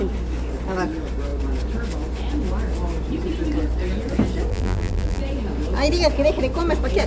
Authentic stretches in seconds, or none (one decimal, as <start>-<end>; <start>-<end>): 0.0-4.5; 5.2-7.1